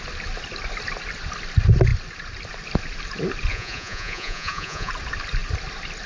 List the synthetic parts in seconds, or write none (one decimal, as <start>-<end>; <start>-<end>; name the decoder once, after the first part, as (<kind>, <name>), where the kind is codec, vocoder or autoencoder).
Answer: 3.5-4.9 (vocoder, Vocos)